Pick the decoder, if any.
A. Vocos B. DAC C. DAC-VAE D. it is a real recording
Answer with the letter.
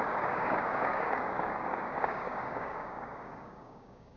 B